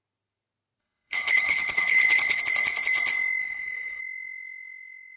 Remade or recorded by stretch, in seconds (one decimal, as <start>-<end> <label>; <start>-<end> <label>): 0.0-0.8 recorded; 0.8-2.4 remade; 2.4-3.4 recorded; 3.4-4.0 remade; 4.0-5.2 recorded